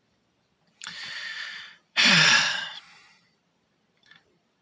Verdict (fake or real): fake